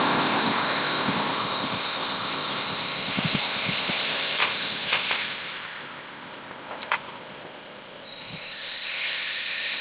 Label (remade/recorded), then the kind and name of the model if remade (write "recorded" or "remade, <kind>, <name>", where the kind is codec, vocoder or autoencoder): remade, codec, ZipCodec